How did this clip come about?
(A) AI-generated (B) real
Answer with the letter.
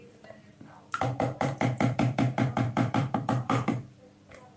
A